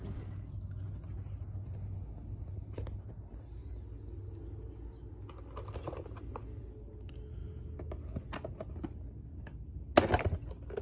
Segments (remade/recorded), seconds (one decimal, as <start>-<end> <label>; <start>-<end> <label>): 0.0-10.8 recorded

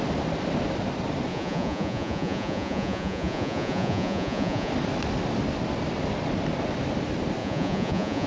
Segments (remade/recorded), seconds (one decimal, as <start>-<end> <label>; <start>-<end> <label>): 0.0-1.3 recorded; 1.3-4.7 remade; 4.7-7.4 recorded; 7.4-8.3 remade